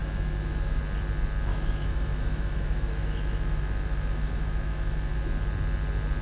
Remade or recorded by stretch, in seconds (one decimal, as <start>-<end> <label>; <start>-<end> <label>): 0.0-0.8 remade; 0.8-1.5 recorded; 1.5-5.2 remade; 5.2-6.2 recorded